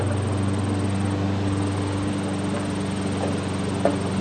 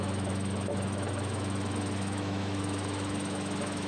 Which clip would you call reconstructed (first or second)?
second